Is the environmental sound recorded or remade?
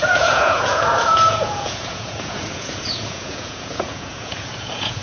remade